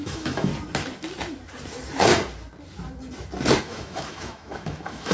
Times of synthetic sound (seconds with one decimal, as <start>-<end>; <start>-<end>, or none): 0.0-0.5; 3.6-5.1